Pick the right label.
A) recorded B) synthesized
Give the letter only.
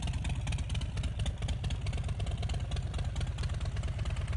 A